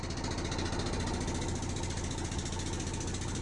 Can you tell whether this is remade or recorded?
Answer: recorded